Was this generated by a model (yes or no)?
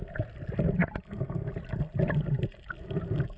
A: no